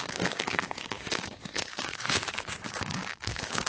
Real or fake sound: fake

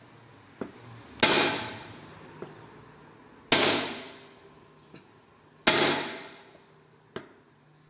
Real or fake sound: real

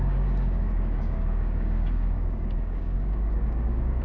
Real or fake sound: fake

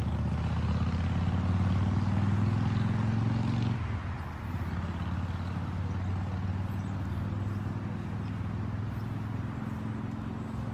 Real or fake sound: real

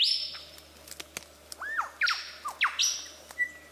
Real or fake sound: real